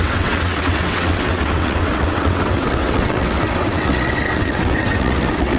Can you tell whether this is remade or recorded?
remade